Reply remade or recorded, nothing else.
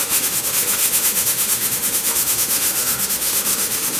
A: remade